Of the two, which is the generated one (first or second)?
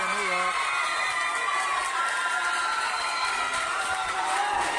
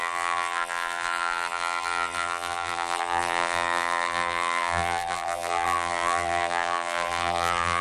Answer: second